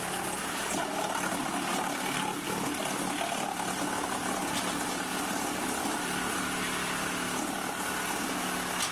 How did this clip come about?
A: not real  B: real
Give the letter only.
B